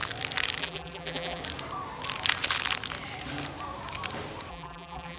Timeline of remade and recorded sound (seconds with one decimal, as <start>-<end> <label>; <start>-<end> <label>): 0.0-0.6 recorded; 0.6-1.4 remade; 1.4-4.5 recorded; 4.5-5.2 remade